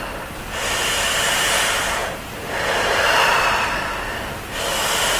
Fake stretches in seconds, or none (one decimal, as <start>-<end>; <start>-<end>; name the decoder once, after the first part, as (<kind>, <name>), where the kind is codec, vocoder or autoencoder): none